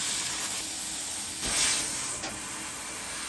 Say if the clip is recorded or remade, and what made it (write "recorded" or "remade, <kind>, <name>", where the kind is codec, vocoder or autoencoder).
recorded